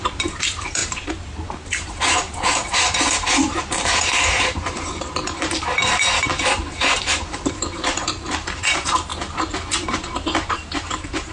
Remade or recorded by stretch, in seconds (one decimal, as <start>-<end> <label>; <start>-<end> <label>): 0.0-9.1 remade; 9.1-10.5 recorded; 10.5-11.3 remade